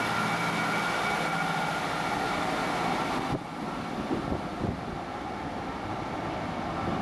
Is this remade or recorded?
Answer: recorded